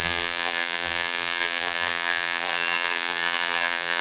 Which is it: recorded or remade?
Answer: remade